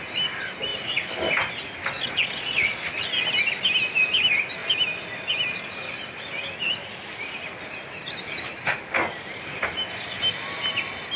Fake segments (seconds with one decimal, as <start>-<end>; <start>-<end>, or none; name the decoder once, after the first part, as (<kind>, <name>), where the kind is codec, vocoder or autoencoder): 2.2-2.9 (vocoder, Vocos)